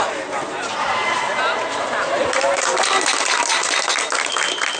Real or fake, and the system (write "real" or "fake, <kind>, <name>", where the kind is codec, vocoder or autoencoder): real